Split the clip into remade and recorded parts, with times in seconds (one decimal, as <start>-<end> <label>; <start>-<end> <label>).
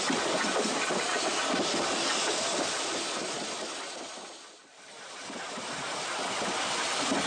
0.0-7.3 recorded